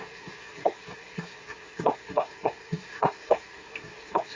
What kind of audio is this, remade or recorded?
remade